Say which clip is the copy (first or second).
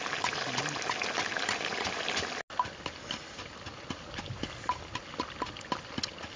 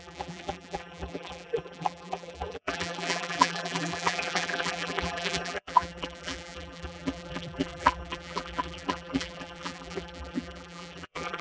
second